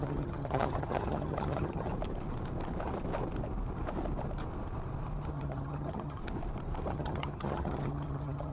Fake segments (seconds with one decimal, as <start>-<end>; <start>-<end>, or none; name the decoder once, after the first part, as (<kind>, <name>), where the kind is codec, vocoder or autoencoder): 0.0-1.9 (vocoder, HiFi-GAN); 5.3-6.2; 6.9-8.5